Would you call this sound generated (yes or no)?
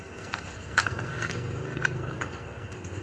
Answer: yes